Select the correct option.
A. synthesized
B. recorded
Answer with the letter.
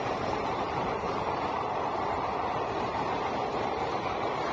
A